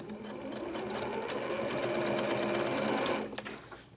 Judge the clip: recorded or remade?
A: recorded